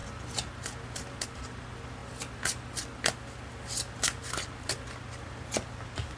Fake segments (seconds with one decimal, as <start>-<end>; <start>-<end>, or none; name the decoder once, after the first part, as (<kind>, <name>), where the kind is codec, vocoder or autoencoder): none